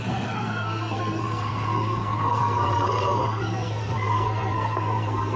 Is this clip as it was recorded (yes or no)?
no